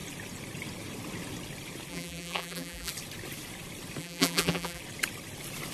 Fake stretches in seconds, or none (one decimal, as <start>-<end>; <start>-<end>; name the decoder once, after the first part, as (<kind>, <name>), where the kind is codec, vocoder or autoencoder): 1.9-2.9 (vocoder, BigVGAN v2); 4.0-4.8